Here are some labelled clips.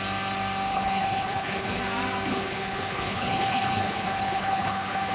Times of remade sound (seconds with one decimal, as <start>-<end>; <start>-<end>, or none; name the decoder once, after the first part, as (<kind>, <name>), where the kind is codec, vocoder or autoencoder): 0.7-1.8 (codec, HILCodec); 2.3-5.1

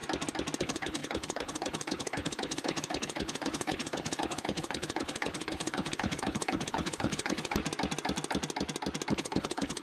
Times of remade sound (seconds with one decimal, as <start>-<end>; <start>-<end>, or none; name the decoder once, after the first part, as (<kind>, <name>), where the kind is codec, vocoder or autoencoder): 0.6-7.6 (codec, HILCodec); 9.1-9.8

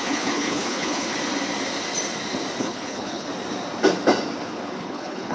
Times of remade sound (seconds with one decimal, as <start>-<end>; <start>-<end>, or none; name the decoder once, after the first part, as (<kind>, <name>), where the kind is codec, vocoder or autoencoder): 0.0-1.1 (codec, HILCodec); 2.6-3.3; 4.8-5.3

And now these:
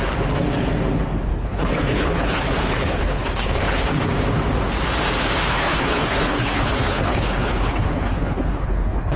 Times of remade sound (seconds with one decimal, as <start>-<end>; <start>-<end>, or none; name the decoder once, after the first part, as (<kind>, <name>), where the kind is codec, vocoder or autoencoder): 1.3-3.9 (codec, HILCodec); 5.5-9.2

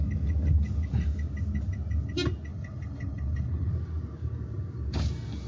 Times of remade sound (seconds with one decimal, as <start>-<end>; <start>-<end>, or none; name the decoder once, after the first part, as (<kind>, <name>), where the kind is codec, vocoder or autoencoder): 2.5-3.7 (codec, HILCodec)

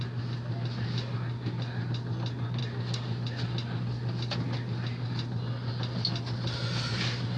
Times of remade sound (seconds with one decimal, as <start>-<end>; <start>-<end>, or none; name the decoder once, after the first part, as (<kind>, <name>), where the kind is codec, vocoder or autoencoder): none